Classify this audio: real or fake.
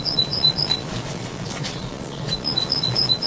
fake